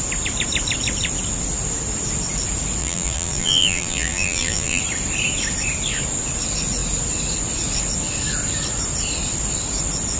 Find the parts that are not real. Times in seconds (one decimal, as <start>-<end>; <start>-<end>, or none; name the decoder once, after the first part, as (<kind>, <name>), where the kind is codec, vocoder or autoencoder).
2.8-4.8 (vocoder, BigVGAN v2)